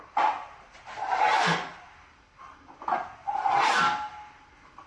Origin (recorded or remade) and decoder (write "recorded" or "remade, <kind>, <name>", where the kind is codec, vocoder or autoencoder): recorded